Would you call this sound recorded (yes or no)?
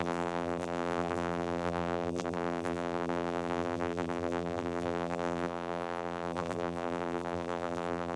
no